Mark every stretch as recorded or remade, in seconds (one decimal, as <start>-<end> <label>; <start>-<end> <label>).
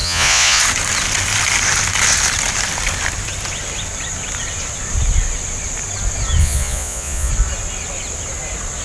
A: 0.0-0.6 remade; 0.6-6.4 recorded; 6.4-7.3 remade; 7.3-8.8 recorded